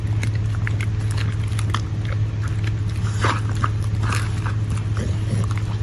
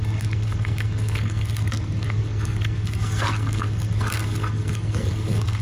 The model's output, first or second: second